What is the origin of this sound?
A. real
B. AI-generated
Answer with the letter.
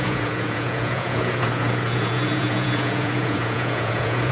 B